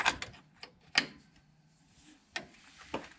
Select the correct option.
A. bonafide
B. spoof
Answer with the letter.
A